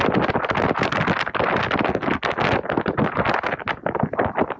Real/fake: real